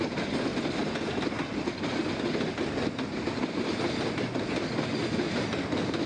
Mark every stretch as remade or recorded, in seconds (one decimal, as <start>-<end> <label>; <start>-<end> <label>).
0.0-6.1 recorded